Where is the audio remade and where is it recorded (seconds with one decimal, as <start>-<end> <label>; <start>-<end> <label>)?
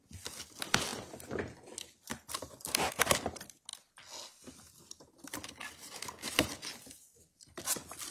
0.0-8.1 recorded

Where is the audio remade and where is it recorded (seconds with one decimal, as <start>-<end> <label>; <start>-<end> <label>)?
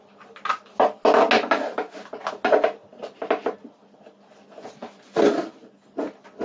0.0-6.4 recorded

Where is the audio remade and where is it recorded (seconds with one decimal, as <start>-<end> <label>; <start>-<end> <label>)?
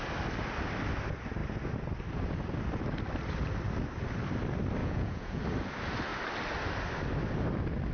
0.0-4.8 recorded; 4.8-5.4 remade; 5.4-7.9 recorded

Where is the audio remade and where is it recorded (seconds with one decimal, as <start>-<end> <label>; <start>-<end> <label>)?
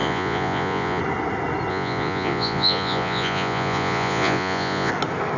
0.0-1.0 remade; 1.0-1.7 recorded; 1.7-4.9 remade; 4.9-5.4 recorded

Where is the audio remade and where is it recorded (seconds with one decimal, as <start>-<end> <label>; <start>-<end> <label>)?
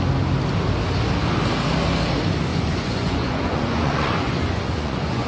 0.0-2.5 recorded; 2.5-5.3 remade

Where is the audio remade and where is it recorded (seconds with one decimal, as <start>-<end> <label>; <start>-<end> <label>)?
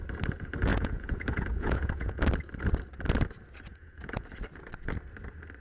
0.0-0.7 recorded; 0.7-2.2 remade; 2.2-3.7 recorded; 3.7-4.2 remade; 4.2-5.6 recorded